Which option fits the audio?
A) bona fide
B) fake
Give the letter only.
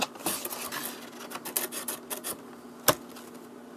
A